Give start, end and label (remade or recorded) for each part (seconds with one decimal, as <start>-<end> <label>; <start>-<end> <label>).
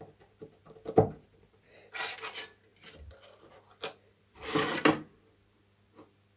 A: 0.0-6.4 recorded